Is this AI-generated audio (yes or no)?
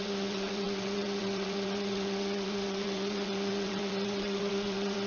yes